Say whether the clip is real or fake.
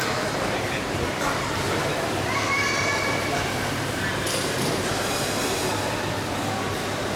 fake